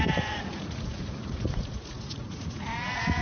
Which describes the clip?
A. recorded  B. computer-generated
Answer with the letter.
B